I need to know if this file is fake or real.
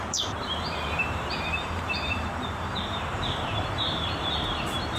fake